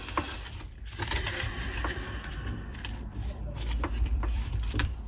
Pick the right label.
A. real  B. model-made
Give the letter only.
B